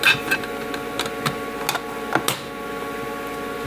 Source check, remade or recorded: recorded